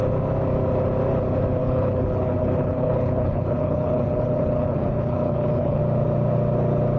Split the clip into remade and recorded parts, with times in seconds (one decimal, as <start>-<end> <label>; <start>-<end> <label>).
0.0-1.6 recorded; 1.6-5.8 remade; 5.8-7.0 recorded